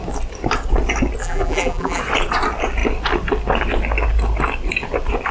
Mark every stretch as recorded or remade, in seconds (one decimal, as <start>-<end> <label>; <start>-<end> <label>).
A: 0.0-1.2 recorded; 1.2-2.0 remade; 2.0-5.3 recorded